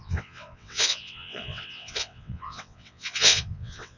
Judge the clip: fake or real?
fake